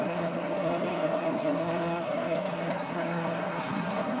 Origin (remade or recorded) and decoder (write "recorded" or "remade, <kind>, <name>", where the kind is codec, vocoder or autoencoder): remade, codec, SNAC